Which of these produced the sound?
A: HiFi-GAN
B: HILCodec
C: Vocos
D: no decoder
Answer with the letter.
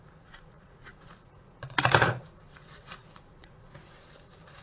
C